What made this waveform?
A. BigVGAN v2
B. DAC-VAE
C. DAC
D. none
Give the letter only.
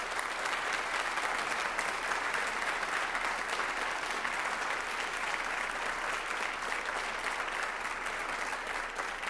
D